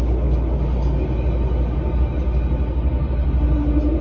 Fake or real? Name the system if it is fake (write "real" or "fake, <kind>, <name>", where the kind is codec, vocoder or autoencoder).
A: real